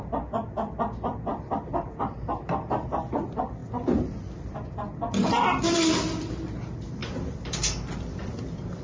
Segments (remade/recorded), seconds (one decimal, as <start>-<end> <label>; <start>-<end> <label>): 0.0-1.3 recorded; 1.3-2.3 remade; 2.3-7.0 recorded; 7.0-8.3 remade; 8.3-8.8 recorded